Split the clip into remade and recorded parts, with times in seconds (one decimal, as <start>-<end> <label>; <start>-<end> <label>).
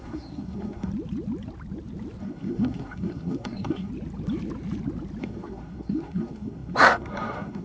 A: 0.0-0.9 remade; 0.9-2.2 recorded; 2.2-3.9 remade; 3.9-5.2 recorded; 5.2-7.6 remade